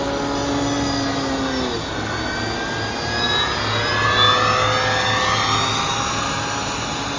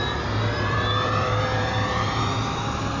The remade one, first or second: second